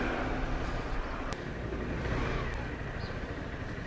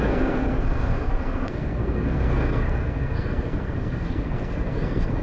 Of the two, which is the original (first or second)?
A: first